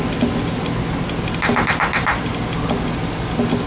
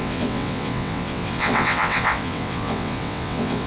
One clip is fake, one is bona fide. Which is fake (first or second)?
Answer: second